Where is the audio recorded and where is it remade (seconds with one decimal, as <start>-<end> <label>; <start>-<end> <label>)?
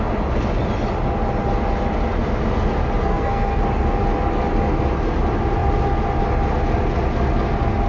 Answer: 0.0-3.0 recorded; 3.0-3.6 remade; 3.6-7.9 recorded